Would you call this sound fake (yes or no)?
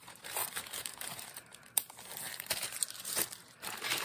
yes